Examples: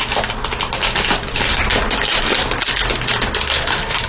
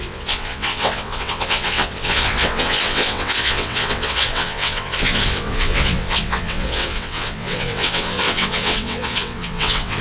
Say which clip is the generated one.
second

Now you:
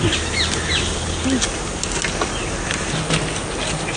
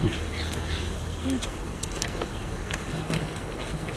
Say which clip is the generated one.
second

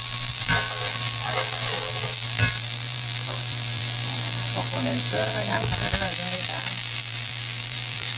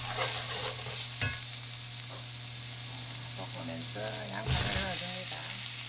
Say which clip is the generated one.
first